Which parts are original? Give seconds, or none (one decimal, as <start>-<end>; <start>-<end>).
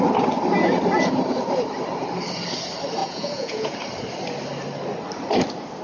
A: 0.0-3.0; 3.8-5.8